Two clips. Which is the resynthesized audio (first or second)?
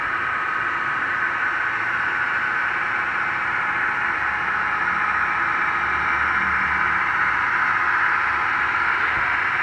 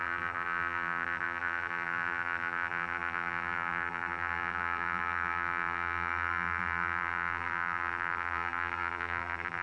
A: second